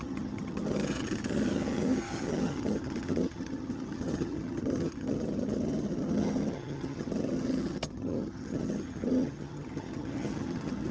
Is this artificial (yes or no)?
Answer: yes